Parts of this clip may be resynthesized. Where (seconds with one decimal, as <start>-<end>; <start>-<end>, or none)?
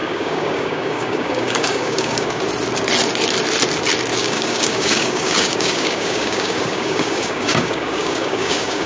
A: 0.0-2.4; 4.1-8.9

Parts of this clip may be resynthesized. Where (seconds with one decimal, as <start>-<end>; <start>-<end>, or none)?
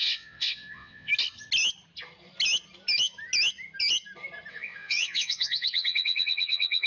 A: 0.0-1.1; 4.5-6.9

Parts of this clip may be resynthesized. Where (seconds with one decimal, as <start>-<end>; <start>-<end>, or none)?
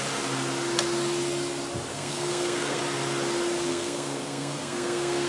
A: 1.9-2.8; 3.7-5.3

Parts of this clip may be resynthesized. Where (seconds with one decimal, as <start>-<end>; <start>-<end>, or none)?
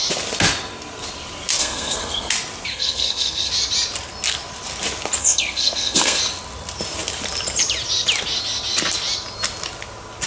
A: 1.6-2.3; 2.7-3.5; 5.2-6.2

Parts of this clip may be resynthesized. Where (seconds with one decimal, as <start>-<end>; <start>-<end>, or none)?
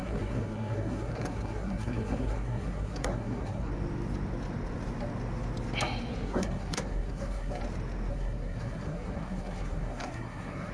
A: 0.0-3.7; 6.1-7.6; 8.1-10.7